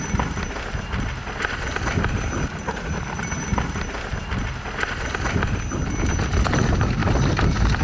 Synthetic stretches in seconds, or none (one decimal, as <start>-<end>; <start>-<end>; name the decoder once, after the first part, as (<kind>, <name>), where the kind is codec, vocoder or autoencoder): none